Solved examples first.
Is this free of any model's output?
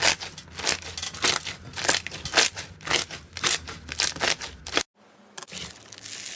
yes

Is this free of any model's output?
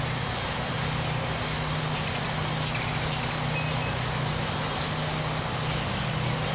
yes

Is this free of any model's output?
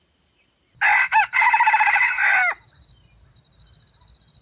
yes